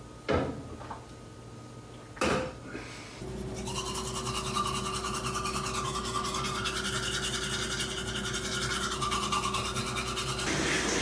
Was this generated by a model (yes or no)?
no